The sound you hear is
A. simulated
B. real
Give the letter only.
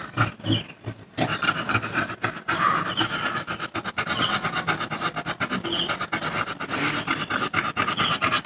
B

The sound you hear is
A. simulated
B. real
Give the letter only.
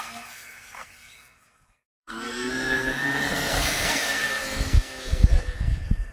A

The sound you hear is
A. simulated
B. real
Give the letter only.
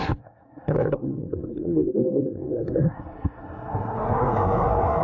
A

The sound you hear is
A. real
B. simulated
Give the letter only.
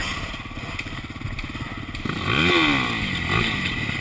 A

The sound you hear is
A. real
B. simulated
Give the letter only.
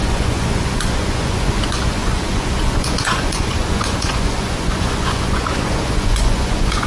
B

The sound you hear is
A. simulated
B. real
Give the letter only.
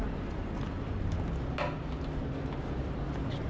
B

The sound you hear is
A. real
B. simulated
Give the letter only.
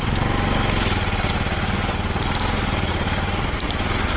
A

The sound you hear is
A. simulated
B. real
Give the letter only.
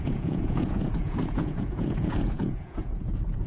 A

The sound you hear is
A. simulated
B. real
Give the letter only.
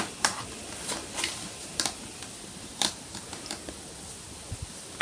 B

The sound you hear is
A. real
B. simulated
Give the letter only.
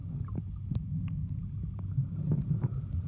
A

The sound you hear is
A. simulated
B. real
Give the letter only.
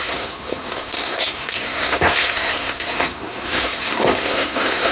A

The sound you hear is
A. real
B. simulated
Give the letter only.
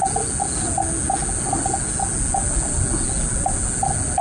A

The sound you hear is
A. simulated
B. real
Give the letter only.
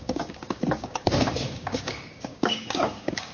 A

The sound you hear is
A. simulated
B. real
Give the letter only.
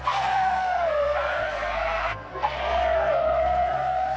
A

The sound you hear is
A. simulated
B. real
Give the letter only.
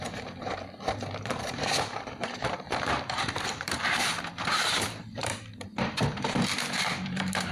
A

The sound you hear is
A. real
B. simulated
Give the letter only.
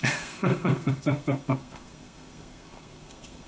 B